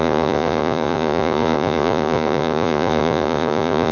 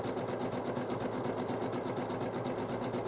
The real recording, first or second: second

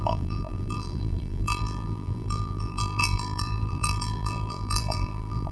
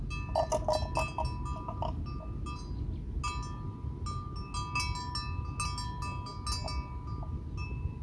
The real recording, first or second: second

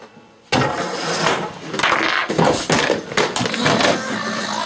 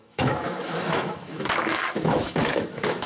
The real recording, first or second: first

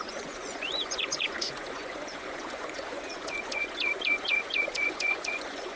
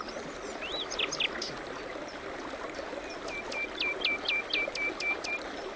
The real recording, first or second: second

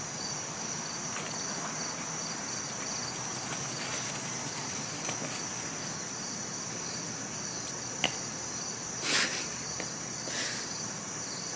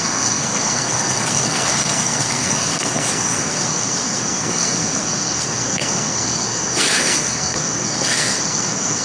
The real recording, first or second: first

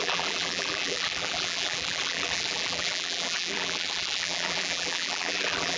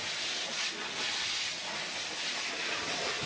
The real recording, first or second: second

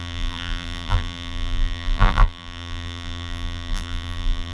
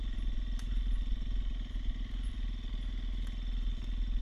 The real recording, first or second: second